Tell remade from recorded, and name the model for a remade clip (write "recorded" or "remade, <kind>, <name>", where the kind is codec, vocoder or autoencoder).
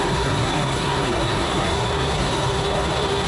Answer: remade, codec, SNAC